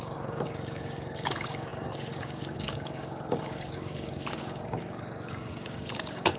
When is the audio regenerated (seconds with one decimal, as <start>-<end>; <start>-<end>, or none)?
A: 0.0-6.4